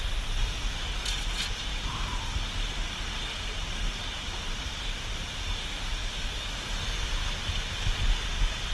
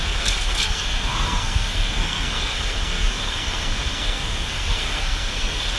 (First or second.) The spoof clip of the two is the second